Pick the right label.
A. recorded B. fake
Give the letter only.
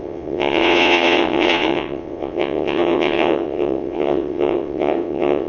B